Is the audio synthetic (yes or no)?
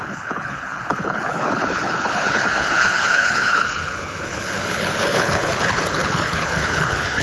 yes